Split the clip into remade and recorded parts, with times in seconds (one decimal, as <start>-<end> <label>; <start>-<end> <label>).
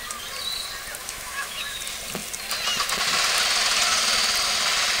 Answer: 0.0-1.0 recorded; 1.0-1.8 remade; 1.8-5.0 recorded